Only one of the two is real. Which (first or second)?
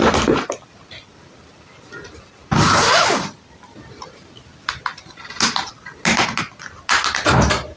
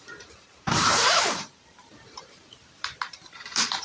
first